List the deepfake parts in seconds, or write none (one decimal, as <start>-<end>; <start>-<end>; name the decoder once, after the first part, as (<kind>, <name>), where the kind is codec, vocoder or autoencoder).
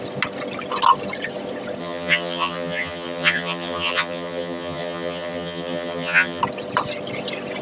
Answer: 1.8-6.4 (vocoder, HiFi-GAN)